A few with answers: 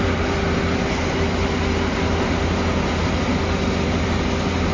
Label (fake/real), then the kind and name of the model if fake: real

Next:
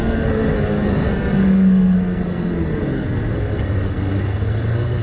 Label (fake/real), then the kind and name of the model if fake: fake, codec, SNAC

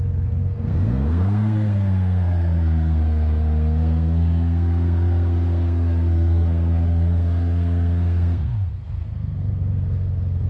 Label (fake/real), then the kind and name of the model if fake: fake, codec, SNAC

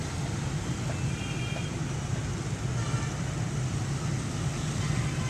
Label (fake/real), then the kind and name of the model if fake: real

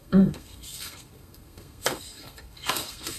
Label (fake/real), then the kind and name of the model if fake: fake, codec, SNAC